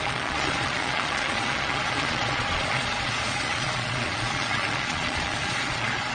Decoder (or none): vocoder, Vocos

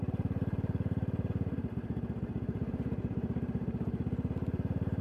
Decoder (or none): vocoder, BigVGAN v2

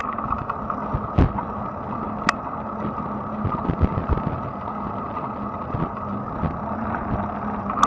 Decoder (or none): none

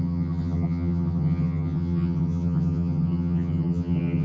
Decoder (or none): vocoder, HiFi-GAN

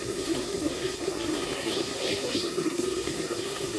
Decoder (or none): codec, SNAC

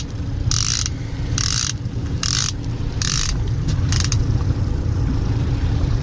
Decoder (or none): vocoder, BigVGAN v2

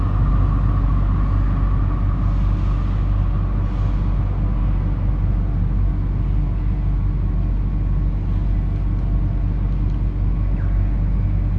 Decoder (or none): none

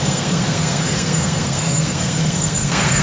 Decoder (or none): codec, SNAC